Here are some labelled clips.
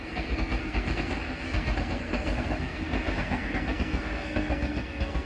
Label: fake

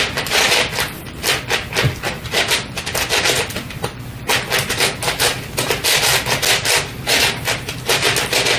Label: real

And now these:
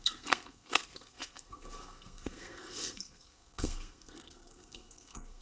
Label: fake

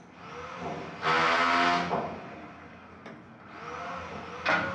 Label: real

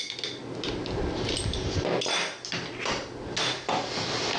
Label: real